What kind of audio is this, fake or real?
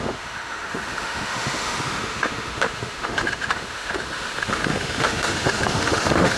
fake